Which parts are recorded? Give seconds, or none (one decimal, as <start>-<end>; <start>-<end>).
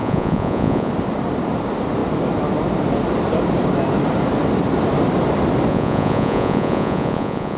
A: 0.9-5.7